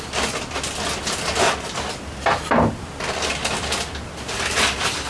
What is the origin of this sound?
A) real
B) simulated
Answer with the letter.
A